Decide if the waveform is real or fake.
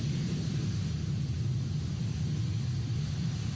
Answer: real